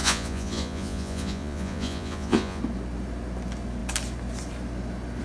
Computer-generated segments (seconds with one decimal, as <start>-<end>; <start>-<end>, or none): 0.0-2.6